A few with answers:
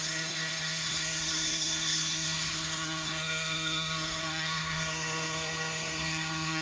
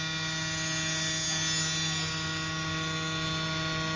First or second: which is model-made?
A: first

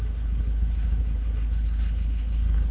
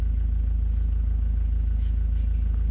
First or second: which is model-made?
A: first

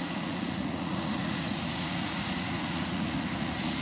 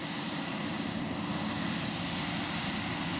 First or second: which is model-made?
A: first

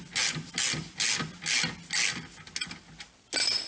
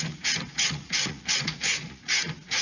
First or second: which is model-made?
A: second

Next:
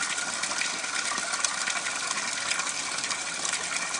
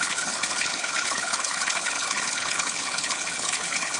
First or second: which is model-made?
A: second